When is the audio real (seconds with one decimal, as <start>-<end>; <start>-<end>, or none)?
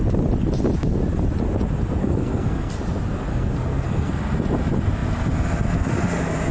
0.0-2.0; 2.8-3.3; 4.1-6.5